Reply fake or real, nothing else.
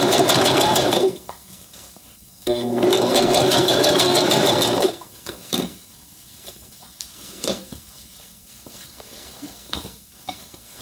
fake